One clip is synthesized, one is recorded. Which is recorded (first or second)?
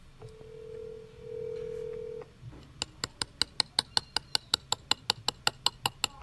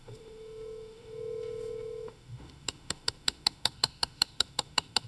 first